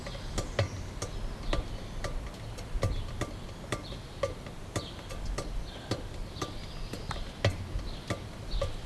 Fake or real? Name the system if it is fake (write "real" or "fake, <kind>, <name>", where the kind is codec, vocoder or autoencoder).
real